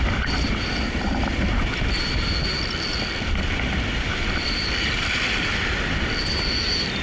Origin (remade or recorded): remade